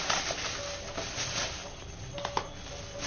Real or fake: real